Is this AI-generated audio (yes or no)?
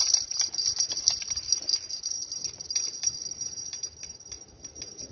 no